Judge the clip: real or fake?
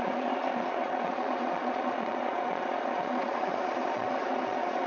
fake